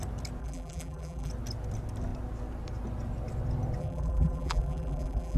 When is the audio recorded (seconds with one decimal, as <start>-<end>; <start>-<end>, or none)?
0.0-0.4; 1.3-3.8

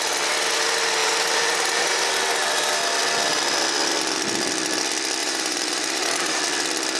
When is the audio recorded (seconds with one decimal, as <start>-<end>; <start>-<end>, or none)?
0.0-1.0; 2.1-5.2; 6.4-7.0